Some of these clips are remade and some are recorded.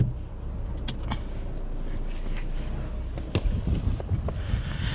recorded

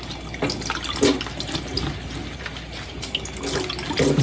recorded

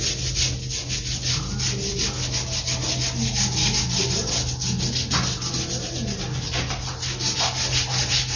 recorded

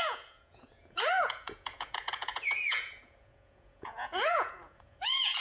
remade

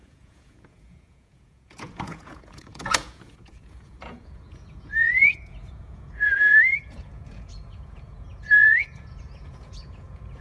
remade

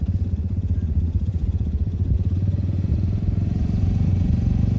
remade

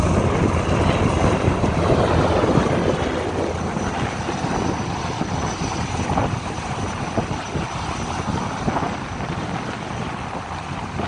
recorded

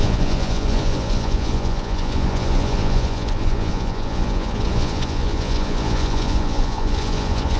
remade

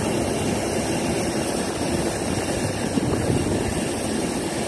recorded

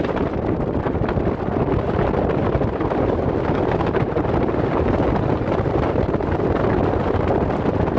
recorded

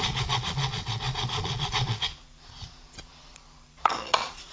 remade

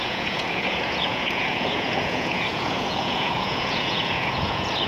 remade